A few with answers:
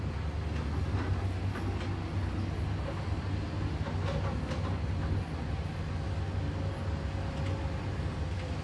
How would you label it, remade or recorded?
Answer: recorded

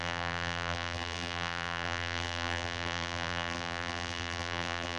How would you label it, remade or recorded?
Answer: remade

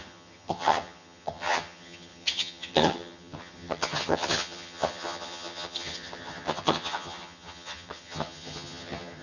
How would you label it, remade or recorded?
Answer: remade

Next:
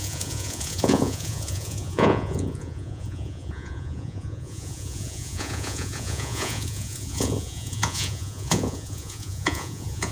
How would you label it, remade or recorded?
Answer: remade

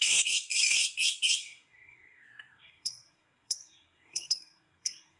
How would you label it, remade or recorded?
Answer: remade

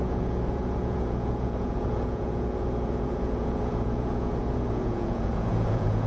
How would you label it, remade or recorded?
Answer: remade